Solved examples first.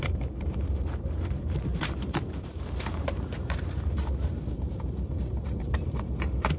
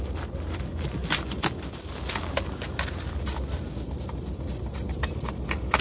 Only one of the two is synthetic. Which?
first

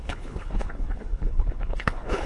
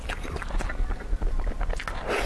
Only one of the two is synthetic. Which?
first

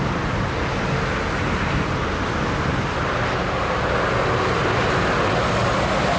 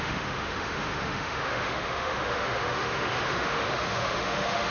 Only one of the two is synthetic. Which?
second